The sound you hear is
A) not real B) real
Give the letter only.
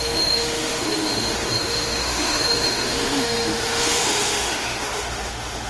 A